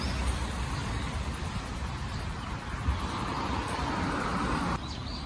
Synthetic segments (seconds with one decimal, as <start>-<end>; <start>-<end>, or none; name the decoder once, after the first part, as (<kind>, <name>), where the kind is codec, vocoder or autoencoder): none